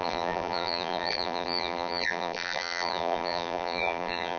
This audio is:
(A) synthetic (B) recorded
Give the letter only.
A